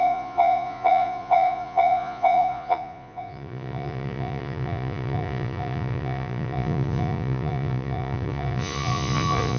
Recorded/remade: remade